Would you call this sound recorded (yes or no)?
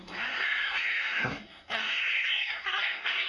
no